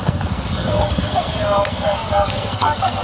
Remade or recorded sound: remade